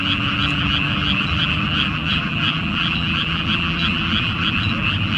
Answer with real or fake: fake